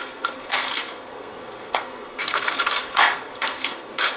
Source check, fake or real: fake